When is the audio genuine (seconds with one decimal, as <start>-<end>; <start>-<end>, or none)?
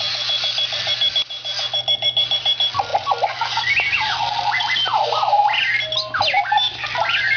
0.0-4.9; 5.6-7.4